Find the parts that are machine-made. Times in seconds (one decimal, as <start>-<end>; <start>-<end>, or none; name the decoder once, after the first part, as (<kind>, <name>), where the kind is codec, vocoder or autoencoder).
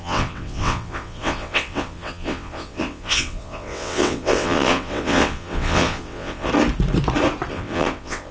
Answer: 0.0-6.5 (vocoder, WaveNeXt); 7.5-8.3